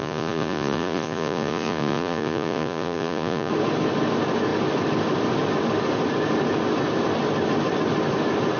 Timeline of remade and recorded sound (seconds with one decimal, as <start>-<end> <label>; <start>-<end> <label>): 0.0-3.5 remade; 3.5-8.6 recorded